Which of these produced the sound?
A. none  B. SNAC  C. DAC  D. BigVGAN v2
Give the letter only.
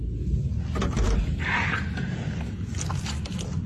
A